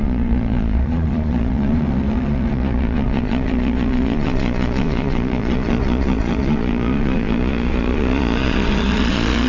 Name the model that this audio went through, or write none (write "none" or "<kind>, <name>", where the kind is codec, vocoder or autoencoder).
vocoder, Vocos